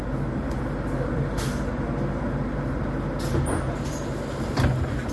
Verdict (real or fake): real